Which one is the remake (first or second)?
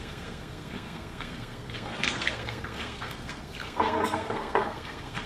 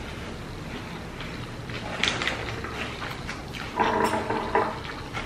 first